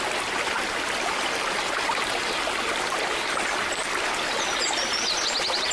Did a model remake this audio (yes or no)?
no